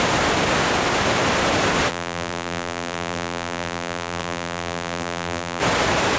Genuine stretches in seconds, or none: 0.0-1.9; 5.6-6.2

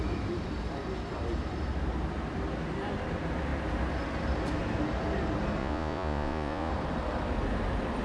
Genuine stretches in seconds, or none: 0.0-5.6; 6.7-8.0

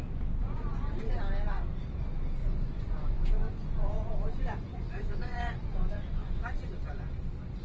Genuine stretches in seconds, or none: 0.0-0.4; 1.2-2.4; 6.7-7.6

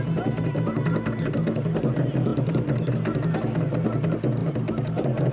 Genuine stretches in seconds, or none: 0.0-5.3

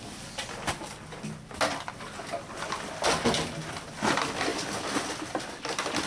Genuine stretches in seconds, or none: 0.0-6.1

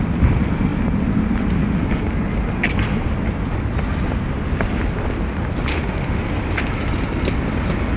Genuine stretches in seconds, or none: 0.0-5.7; 6.2-8.0

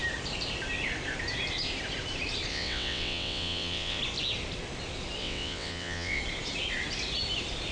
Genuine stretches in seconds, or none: 0.0-2.5; 4.0-5.2; 6.2-7.7

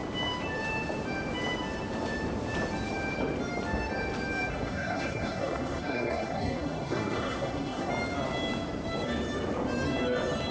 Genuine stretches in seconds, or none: 0.0-4.5; 7.9-10.5